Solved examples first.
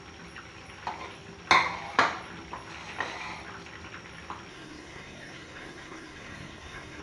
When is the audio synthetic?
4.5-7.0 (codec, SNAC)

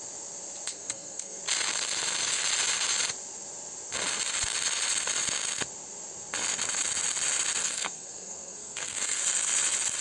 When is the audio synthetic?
0.7-1.4 (codec, SNAC); 7.6-9.2

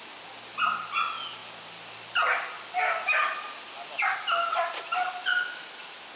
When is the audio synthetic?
none

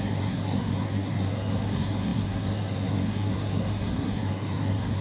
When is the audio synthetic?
0.0-5.0 (codec, SNAC)